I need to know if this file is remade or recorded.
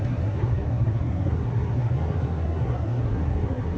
remade